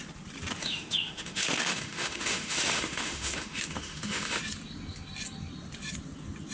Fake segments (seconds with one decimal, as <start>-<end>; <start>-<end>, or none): 0.6-4.4